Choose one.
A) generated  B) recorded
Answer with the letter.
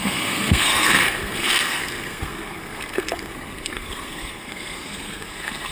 A